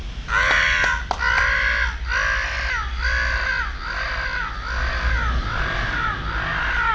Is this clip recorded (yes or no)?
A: yes